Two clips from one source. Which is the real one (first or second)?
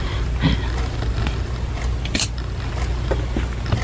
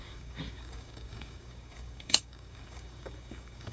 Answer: first